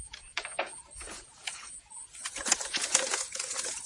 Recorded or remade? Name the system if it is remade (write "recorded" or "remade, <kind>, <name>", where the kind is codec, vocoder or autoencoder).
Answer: remade, vocoder, Vocos